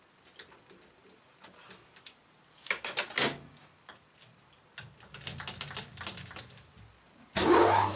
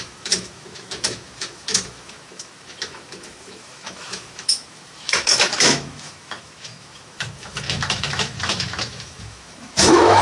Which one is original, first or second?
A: first